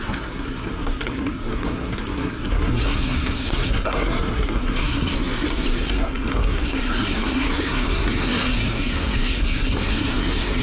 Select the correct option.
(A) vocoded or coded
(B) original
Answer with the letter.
A